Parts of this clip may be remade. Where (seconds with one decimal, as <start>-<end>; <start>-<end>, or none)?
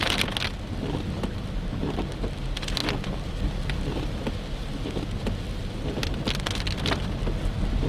none